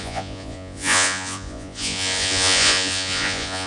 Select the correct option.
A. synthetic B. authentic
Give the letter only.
A